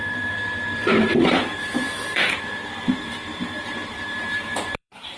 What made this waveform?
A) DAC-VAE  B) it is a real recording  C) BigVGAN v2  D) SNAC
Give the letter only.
C